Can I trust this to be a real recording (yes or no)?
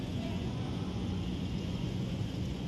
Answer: no